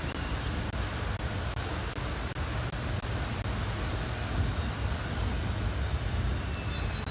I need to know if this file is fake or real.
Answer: real